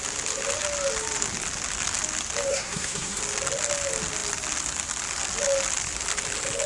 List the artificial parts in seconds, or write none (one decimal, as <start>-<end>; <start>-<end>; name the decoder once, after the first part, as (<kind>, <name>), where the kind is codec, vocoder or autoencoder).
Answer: 2.5-3.2 (codec, SNAC)